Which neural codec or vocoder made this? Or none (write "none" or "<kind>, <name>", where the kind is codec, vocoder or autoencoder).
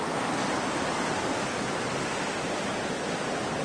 none